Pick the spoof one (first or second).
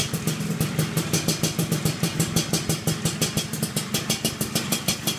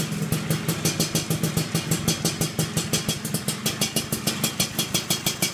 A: first